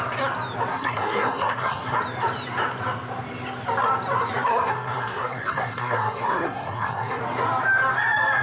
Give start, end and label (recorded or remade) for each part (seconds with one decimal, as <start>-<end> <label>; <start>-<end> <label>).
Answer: 0.0-0.7 recorded; 0.7-2.0 remade; 2.0-4.5 recorded; 4.5-7.2 remade; 7.2-8.4 recorded